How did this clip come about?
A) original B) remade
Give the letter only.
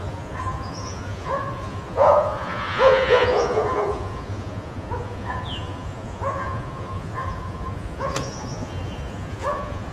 B